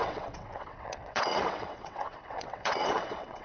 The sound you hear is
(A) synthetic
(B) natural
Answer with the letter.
A